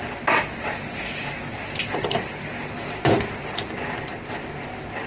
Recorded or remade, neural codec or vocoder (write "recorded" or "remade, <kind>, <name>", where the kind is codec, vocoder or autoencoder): remade, vocoder, BigVGAN v2